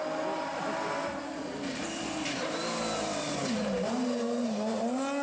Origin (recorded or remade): recorded